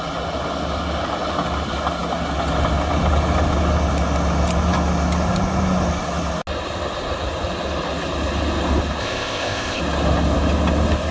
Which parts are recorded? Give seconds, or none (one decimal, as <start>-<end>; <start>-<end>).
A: 0.0-9.0; 9.8-11.1